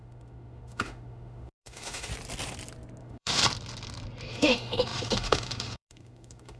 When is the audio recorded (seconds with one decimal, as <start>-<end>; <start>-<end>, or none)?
2.1-3.0; 3.4-4.3